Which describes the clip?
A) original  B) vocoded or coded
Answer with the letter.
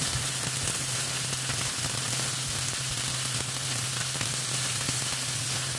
A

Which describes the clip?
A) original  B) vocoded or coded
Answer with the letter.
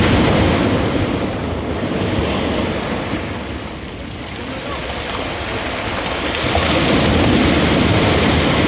A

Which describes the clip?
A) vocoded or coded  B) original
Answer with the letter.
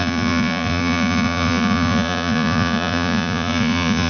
A